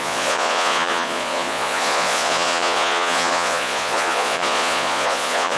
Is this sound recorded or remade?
remade